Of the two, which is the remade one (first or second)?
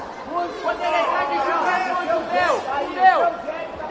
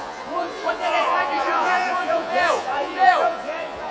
second